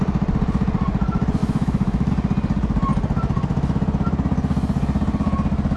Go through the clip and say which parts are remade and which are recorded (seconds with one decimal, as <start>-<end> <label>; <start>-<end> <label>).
0.0-1.4 recorded; 1.4-2.1 remade; 2.1-5.8 recorded